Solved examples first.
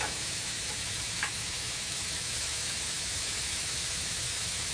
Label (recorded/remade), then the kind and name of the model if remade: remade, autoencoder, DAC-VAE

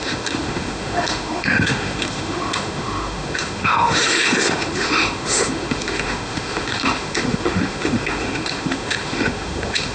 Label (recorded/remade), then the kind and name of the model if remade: remade, autoencoder, DAC-VAE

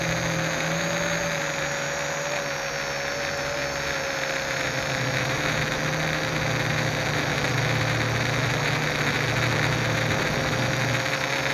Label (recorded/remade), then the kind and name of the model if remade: recorded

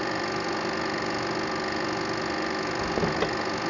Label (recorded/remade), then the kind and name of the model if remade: recorded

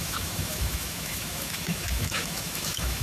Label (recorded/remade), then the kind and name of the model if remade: remade, autoencoder, DAC-VAE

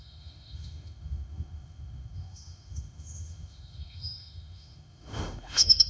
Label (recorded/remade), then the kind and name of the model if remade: remade, autoencoder, DAC-VAE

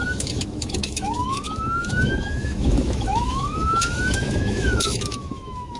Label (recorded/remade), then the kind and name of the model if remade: remade, autoencoder, DAC-VAE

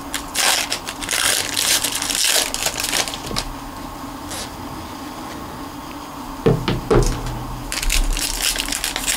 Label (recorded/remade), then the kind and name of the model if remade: recorded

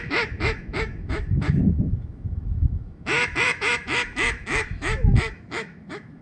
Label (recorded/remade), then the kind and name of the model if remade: remade, autoencoder, DAC-VAE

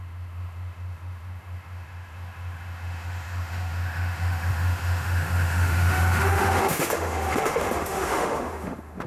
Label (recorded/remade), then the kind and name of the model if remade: remade, autoencoder, DAC-VAE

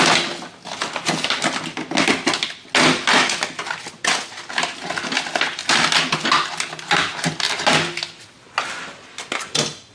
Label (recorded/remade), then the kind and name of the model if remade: recorded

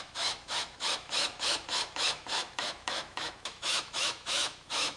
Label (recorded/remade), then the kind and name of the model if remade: remade, autoencoder, DAC-VAE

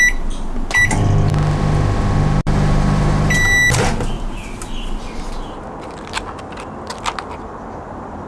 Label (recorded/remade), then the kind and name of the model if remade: recorded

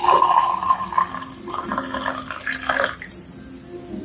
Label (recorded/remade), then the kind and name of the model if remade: recorded